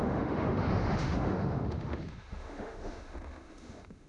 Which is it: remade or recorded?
remade